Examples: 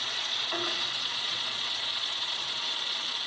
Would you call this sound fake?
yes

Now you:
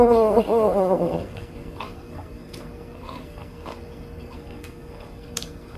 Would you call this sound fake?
yes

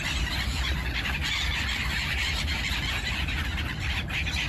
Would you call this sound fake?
no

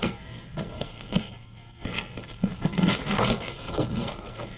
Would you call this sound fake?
yes